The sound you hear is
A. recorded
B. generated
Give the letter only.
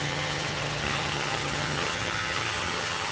B